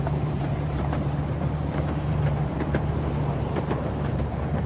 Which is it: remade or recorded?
remade